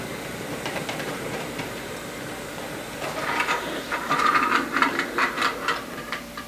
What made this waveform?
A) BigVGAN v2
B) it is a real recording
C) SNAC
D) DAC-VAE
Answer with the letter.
A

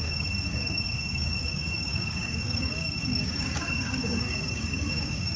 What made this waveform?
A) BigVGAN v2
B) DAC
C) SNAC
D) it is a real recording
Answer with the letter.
B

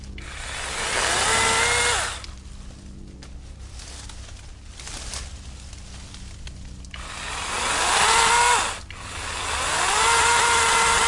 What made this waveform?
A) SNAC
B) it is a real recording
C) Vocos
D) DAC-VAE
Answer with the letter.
B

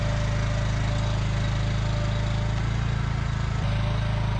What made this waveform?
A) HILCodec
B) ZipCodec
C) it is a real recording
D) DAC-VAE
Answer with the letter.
C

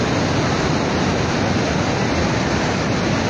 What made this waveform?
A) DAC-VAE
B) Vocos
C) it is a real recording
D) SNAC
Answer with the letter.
C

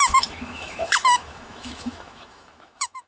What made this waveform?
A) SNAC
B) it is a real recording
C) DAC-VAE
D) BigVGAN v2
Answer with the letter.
C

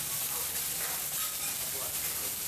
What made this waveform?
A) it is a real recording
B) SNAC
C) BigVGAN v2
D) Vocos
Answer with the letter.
A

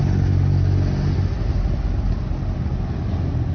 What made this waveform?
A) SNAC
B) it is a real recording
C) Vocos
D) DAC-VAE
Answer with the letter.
B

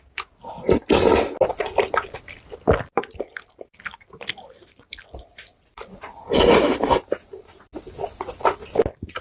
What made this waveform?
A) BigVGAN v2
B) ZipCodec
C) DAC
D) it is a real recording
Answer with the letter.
D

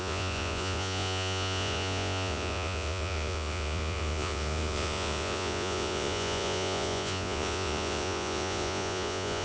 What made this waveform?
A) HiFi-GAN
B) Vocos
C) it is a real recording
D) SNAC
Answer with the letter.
B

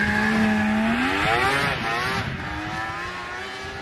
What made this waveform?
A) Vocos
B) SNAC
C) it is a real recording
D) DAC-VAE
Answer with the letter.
C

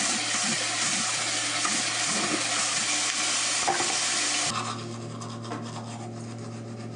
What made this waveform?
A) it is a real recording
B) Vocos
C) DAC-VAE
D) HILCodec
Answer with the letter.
A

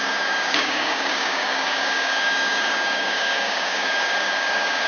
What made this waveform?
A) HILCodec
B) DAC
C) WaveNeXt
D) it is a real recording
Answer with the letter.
B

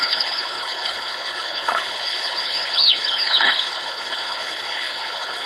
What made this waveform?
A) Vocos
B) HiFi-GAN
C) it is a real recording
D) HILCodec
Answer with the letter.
D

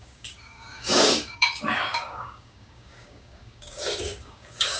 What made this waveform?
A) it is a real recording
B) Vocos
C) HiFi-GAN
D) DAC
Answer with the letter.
D